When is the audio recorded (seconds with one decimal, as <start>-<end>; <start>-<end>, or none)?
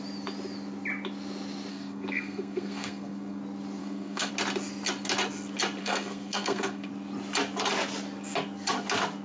0.0-1.7; 3.4-3.8; 4.3-5.8; 6.9-9.2